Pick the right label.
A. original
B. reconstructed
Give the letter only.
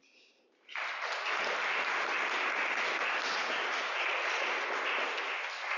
A